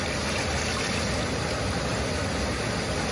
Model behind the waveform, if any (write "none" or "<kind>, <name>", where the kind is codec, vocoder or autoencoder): none